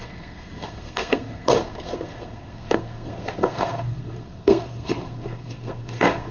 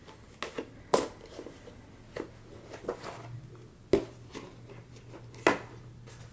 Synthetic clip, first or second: first